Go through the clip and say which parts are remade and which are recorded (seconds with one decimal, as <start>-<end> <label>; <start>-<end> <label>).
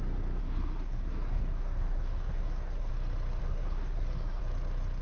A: 0.0-0.4 recorded; 0.4-2.9 remade; 2.9-3.4 recorded; 3.4-4.4 remade; 4.4-5.0 recorded